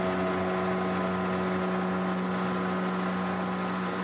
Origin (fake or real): real